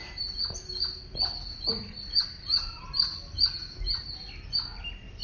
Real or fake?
real